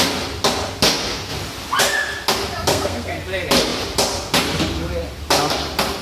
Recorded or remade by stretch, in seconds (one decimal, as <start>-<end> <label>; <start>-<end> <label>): 0.0-2.7 recorded; 2.7-3.2 remade; 3.2-6.0 recorded

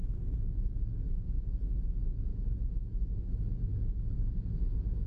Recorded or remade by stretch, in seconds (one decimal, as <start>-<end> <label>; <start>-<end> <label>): 0.0-5.1 remade

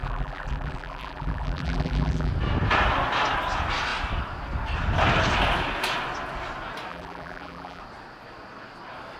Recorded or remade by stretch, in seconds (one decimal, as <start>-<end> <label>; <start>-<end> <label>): 0.0-2.3 remade; 2.3-6.9 recorded; 6.9-7.8 remade; 7.8-9.2 recorded

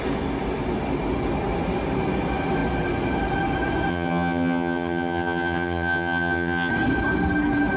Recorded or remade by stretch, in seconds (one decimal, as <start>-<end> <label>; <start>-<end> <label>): 0.0-3.9 recorded; 3.9-6.7 remade; 6.7-7.8 recorded

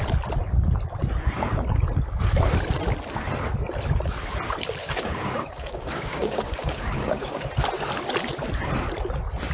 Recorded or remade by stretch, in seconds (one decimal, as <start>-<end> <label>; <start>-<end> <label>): 0.0-4.8 recorded; 4.8-7.5 remade; 7.5-9.5 recorded